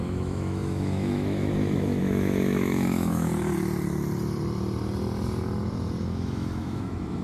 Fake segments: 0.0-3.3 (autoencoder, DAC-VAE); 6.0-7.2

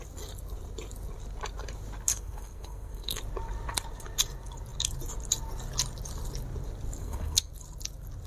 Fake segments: 2.1-3.2 (codec, SNAC); 7.0-7.5

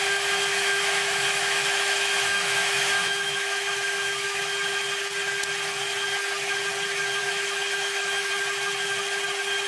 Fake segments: 0.5-4.4 (autoencoder, DAC-VAE); 7.2-8.3

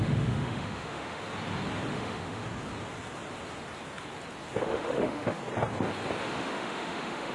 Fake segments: 0.0-1.2 (autoencoder, DAC-VAE); 1.9-2.4; 4.6-5.4; 6.2-7.3

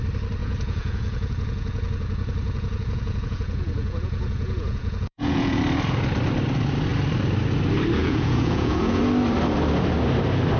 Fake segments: 0.4-5.6 (vocoder, Vocos); 8.0-9.0